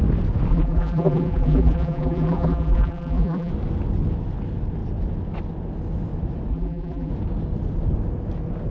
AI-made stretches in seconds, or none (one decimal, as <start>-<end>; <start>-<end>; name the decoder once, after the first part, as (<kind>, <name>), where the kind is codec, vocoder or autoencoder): 0.5-3.5 (vocoder, BigVGAN v2); 6.5-7.1